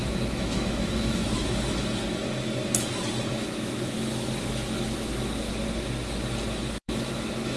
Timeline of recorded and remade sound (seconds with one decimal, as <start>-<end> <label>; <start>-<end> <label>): 0.0-1.2 remade; 1.2-3.3 recorded; 3.3-5.5 remade; 5.5-6.8 recorded; 6.8-7.6 remade